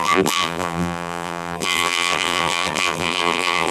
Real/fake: fake